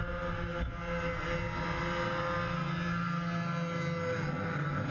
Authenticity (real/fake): real